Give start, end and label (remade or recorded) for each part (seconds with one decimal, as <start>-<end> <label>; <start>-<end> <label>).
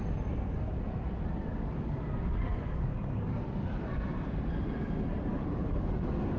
0.0-1.5 recorded; 1.5-3.9 remade; 3.9-5.3 recorded; 5.3-6.4 remade